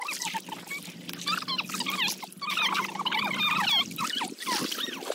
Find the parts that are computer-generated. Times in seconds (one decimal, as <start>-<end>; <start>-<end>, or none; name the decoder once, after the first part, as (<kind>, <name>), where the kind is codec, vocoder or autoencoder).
none